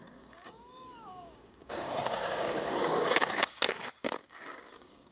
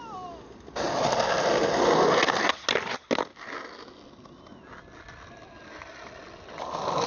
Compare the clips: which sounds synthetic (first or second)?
first